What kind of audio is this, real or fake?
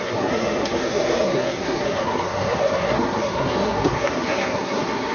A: fake